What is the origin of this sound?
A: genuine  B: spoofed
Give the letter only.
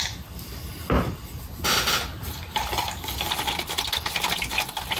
A